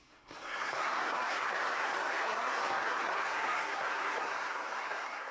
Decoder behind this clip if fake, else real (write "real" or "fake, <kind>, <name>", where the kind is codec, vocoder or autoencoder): fake, codec, SNAC